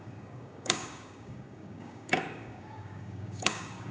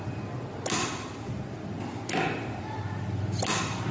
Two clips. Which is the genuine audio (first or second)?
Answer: second